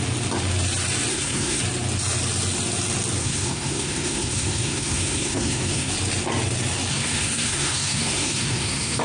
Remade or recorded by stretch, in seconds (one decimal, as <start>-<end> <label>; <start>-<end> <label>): 0.0-1.1 recorded; 1.1-1.6 remade; 1.6-3.2 recorded; 3.2-5.9 remade; 5.9-6.9 recorded; 6.9-9.0 remade